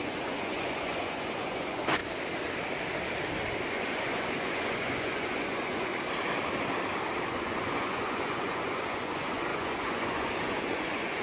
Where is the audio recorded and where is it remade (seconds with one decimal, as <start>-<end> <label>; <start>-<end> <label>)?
0.0-2.0 remade; 2.0-3.7 recorded; 3.7-5.9 remade; 5.9-7.3 recorded; 7.3-11.2 remade